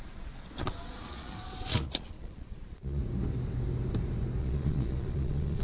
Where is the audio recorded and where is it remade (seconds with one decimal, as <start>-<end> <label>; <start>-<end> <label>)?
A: 0.0-3.0 remade; 3.0-4.4 recorded; 4.4-5.6 remade